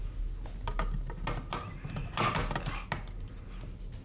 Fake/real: real